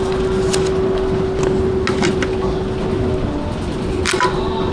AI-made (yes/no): no